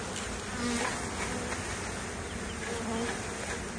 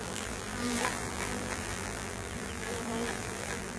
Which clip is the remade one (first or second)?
second